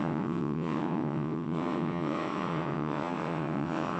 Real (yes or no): no